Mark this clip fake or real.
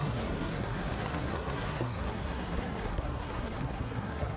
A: fake